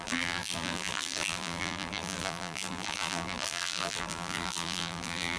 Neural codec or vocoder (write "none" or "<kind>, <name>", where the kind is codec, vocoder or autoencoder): vocoder, BigVGAN v2